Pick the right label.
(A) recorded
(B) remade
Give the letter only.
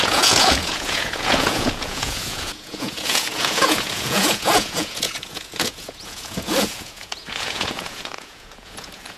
B